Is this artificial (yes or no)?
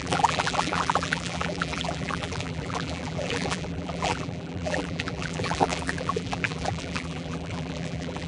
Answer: yes